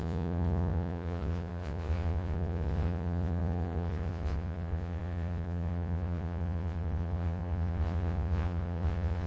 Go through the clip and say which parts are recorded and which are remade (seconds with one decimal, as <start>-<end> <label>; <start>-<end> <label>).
0.0-9.3 remade